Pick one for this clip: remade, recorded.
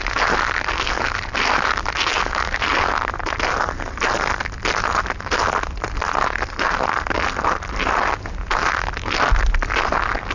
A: recorded